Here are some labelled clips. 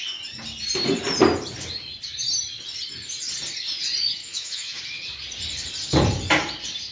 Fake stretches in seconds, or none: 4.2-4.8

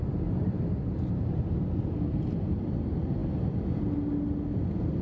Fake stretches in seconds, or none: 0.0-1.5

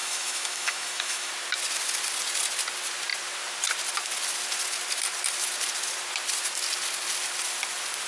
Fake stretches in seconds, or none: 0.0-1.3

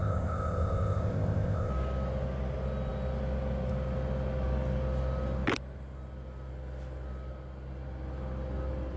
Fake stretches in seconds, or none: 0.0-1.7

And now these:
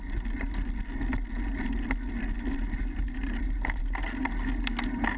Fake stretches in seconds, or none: 2.6-3.8